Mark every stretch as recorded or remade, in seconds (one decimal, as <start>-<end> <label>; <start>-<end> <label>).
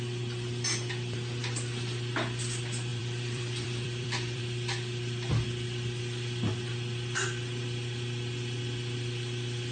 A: 0.0-2.9 recorded; 2.9-4.4 remade; 4.4-9.7 recorded